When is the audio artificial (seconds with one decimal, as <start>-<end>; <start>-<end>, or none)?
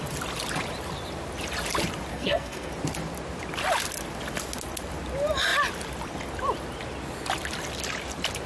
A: 2.1-2.7